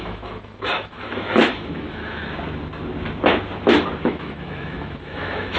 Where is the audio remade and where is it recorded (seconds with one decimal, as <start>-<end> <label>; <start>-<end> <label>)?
0.0-2.2 remade; 2.2-4.0 recorded; 4.0-5.6 remade